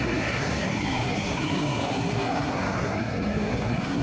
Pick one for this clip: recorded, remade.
remade